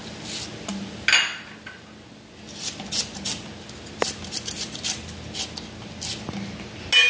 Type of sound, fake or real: real